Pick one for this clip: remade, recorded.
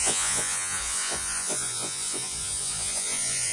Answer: remade